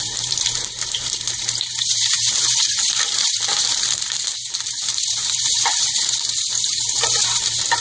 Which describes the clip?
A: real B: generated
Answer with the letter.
B